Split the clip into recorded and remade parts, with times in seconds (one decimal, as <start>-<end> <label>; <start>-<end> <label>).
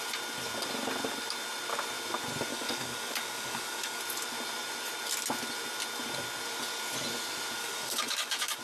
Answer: 0.0-2.5 recorded; 2.5-4.0 remade; 4.0-7.6 recorded; 7.6-8.6 remade